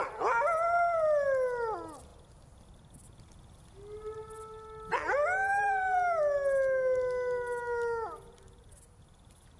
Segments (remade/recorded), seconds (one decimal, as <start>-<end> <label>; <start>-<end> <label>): 0.0-9.6 recorded